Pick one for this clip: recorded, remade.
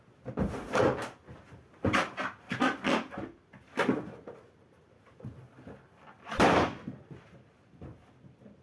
recorded